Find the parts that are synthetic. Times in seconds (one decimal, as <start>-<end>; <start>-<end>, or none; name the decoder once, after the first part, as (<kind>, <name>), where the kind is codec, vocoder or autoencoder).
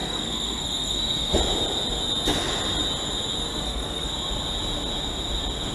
0.0-1.4 (codec, SNAC); 3.5-4.1